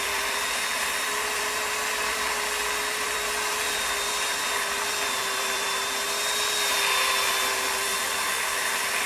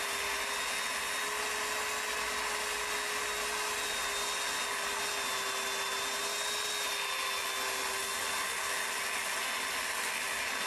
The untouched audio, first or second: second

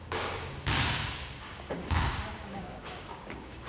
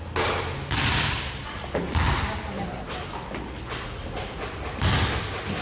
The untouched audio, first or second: second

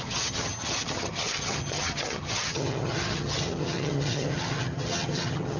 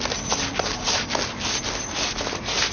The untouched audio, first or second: second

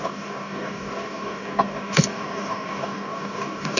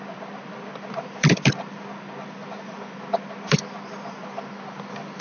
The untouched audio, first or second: second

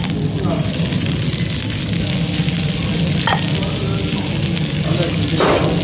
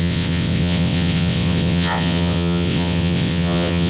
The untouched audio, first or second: first